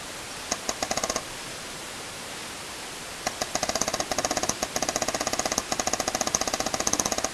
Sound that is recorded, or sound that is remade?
recorded